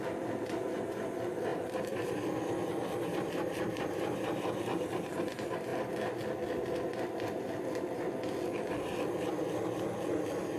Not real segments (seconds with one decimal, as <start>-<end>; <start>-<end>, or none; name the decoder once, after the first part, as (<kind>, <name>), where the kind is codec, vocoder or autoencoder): 1.5-2.0 (vocoder, BigVGAN v2); 3.1-5.3